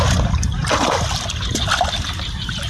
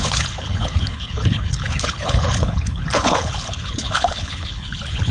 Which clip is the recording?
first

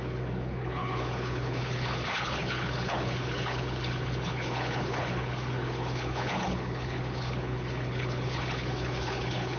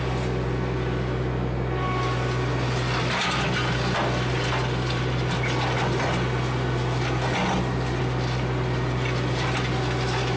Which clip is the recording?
second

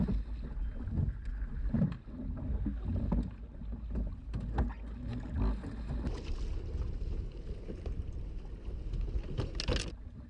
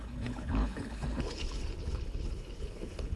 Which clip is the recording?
first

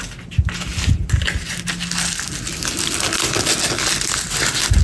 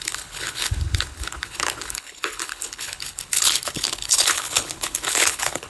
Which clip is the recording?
first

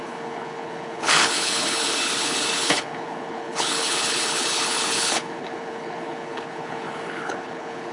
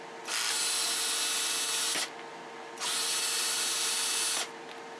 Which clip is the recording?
second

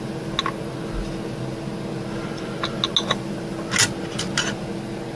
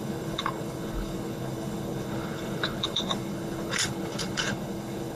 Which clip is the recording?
first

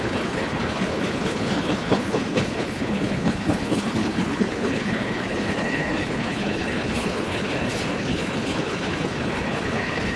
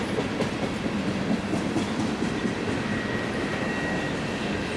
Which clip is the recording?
second